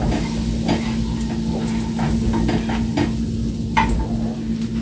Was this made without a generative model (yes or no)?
yes